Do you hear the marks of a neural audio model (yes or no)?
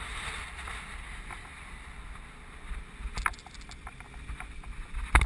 no